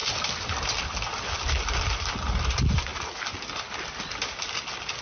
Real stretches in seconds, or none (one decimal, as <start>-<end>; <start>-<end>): 0.0-5.0